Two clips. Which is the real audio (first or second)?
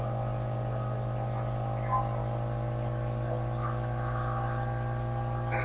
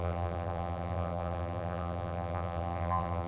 first